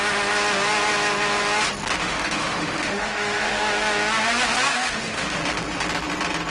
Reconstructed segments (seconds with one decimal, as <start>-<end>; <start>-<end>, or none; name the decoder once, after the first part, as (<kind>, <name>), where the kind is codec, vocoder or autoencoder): 2.0-3.6 (autoencoder, DAC-VAE); 4.7-5.4